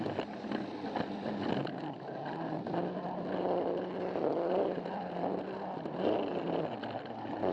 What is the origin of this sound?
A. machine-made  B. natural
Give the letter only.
B